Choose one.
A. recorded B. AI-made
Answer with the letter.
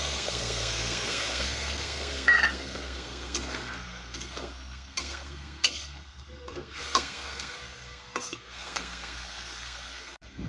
B